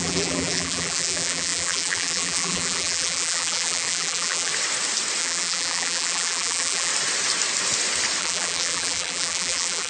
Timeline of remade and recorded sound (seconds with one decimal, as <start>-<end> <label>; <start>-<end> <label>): 0.0-4.5 remade; 4.5-5.2 recorded; 5.2-6.9 remade; 6.9-8.2 recorded; 8.2-9.9 remade